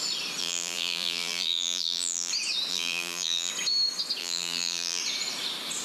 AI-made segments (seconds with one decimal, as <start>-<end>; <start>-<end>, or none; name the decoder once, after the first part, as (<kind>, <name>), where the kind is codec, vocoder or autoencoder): 0.4-2.3 (vocoder, BigVGAN v2); 2.7-3.5; 4.2-5.0

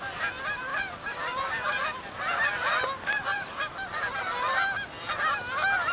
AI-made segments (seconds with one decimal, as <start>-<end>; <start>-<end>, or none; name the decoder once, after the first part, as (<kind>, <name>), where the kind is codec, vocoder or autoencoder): 0.7-2.7 (vocoder, BigVGAN v2); 3.3-4.1

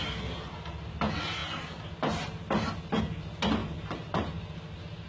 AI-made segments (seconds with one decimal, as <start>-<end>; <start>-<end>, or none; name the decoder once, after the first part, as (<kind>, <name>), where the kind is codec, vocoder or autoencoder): 3.6-5.1 (vocoder, BigVGAN v2)

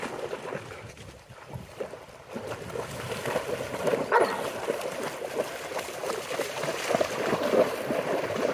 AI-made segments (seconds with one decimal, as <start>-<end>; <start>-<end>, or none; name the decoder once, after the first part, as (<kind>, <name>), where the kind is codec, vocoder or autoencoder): none

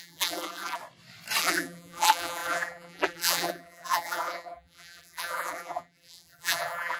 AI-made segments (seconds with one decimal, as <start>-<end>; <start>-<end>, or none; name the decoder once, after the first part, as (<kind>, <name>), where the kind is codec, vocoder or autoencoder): 0.0-0.8 (vocoder, BigVGAN v2); 1.4-7.0

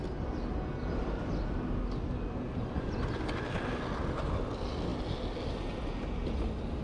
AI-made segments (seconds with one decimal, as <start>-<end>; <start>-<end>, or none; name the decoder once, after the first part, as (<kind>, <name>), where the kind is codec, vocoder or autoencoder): none

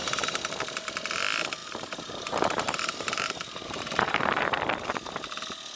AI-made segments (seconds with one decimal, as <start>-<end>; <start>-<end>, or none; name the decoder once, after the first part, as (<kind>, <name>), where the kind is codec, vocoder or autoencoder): 0.0-0.5 (vocoder, BigVGAN v2); 1.6-4.7

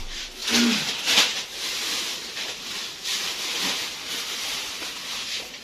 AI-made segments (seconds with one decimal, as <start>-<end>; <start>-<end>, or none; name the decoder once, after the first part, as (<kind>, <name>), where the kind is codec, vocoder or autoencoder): 0.0-0.4 (vocoder, BigVGAN v2); 1.1-5.6